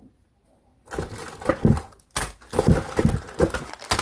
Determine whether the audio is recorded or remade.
recorded